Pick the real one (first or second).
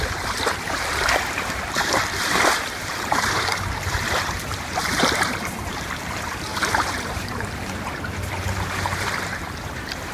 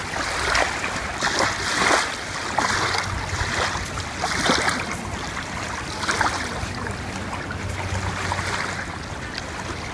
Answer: second